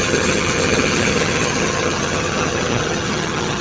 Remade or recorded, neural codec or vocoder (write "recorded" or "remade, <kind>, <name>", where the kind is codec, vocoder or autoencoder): remade, vocoder, HiFi-GAN